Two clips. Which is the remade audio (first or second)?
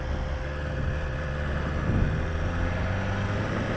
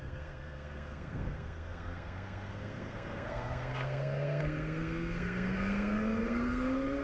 second